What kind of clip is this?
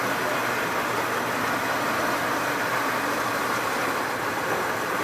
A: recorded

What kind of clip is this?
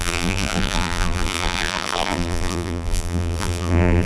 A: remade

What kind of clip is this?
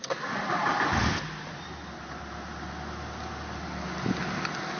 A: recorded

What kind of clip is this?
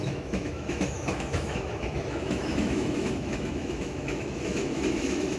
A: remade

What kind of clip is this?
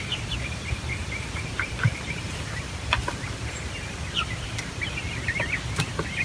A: remade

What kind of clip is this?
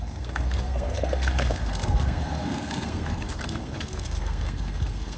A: remade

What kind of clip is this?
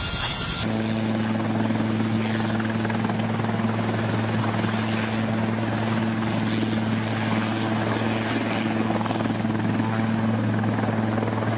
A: recorded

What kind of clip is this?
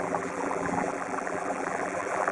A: remade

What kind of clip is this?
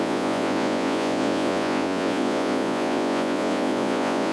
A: remade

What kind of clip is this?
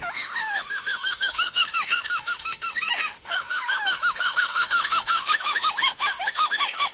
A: remade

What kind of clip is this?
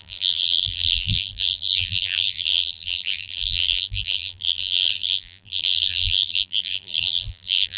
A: remade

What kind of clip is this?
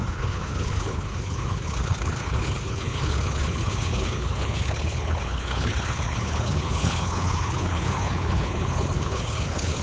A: remade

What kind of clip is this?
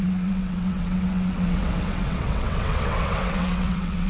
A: remade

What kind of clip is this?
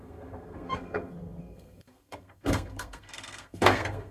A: remade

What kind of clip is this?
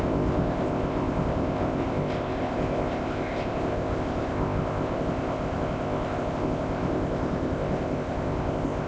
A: remade